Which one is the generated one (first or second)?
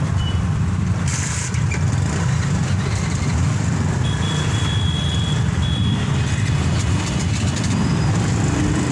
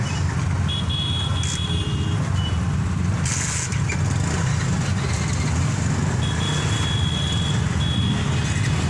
first